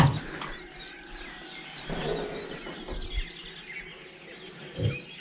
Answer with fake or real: real